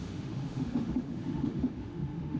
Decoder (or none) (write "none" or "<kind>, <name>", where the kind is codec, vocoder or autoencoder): autoencoder, DAC-VAE